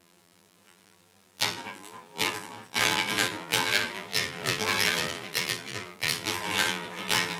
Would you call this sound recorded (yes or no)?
no